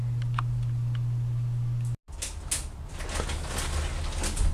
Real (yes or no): yes